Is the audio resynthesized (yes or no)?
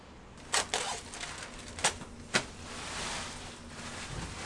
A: no